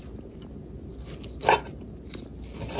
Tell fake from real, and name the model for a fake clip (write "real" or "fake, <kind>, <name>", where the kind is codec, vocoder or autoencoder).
real